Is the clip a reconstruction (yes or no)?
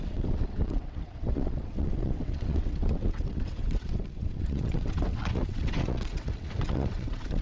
yes